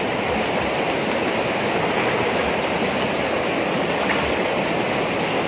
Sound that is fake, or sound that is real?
real